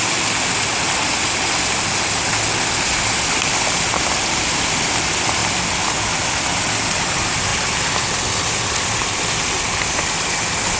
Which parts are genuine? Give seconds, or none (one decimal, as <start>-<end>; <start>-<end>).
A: 0.0-10.8